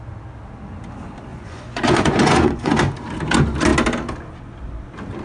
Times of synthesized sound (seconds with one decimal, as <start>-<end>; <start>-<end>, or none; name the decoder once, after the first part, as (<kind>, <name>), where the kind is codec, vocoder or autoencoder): 1.3-2.8 (vocoder, Vocos)